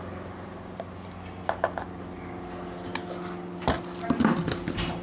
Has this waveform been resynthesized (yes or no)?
no